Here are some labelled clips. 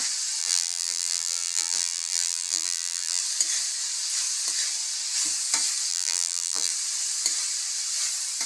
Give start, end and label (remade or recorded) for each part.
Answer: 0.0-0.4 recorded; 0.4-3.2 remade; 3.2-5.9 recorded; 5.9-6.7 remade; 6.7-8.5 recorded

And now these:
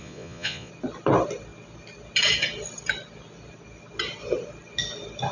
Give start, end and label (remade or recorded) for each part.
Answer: 0.0-0.7 remade; 0.7-5.3 recorded

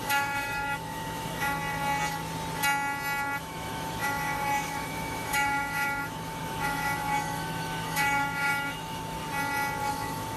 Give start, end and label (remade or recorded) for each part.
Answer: 0.0-1.6 remade; 1.6-3.4 recorded; 3.4-9.2 remade; 9.2-9.9 recorded; 9.9-10.4 remade

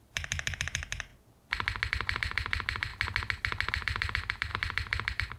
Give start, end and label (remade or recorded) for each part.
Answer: 0.0-1.1 remade; 1.1-1.9 recorded; 1.9-2.9 remade; 2.9-3.7 recorded; 3.7-5.4 remade

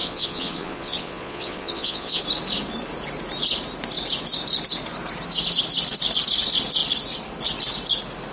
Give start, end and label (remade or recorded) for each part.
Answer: 0.0-2.2 remade; 2.2-8.3 recorded

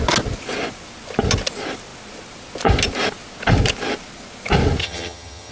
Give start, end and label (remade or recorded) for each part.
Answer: 0.0-4.8 recorded; 4.8-5.5 remade

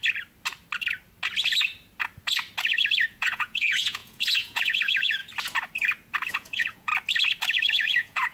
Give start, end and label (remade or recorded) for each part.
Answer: 0.0-3.1 recorded; 3.1-5.2 remade; 5.2-6.3 recorded; 6.3-6.9 remade; 6.9-7.7 recorded; 7.7-8.3 remade